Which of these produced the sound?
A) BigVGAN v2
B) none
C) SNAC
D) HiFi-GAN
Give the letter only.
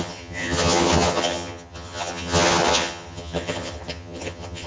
D